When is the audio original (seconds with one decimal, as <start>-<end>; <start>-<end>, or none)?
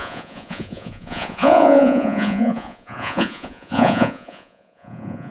none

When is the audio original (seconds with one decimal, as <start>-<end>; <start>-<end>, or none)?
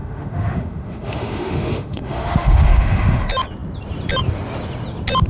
3.2-5.3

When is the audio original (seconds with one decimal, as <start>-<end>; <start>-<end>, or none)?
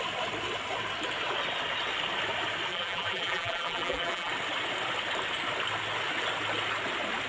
0.0-2.7; 4.3-7.3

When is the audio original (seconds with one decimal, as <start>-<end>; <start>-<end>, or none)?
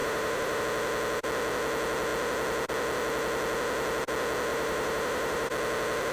0.6-4.5; 5.5-6.1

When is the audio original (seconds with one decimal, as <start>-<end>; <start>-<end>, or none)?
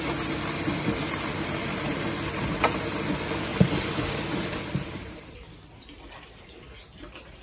0.0-1.6; 2.1-3.5; 5.3-7.4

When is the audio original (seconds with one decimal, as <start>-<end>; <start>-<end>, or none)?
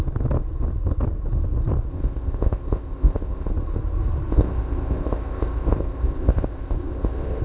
0.0-1.9; 3.5-4.3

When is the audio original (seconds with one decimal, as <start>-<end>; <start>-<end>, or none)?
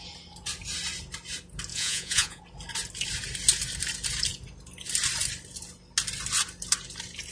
0.0-1.7; 2.4-7.3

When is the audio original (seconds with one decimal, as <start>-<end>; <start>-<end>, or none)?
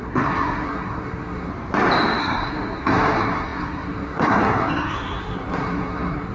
1.5-2.2